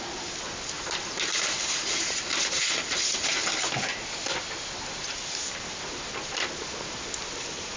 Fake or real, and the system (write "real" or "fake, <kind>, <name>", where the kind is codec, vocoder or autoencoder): real